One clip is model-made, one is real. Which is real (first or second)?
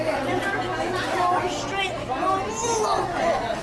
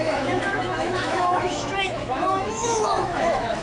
first